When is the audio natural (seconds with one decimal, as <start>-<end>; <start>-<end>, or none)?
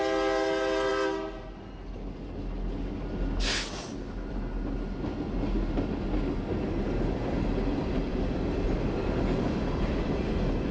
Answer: 0.0-10.7